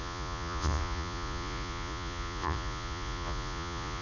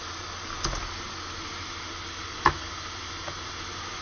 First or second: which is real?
second